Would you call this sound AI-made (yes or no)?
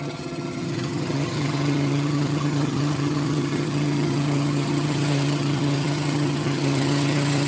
yes